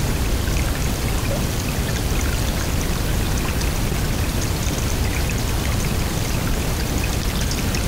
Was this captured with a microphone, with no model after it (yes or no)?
yes